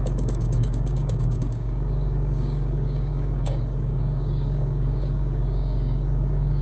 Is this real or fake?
fake